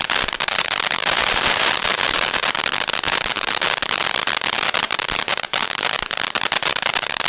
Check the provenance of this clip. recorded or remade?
remade